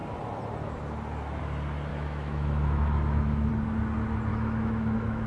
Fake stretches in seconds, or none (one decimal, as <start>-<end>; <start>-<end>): 1.9-3.5; 4.3-5.3

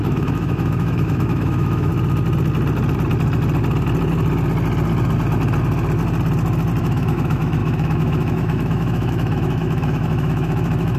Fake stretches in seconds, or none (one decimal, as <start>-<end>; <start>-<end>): 0.0-1.9; 6.8-11.0